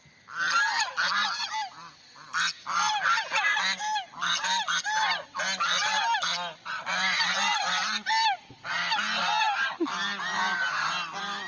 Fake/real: real